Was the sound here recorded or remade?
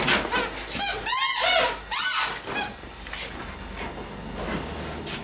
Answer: recorded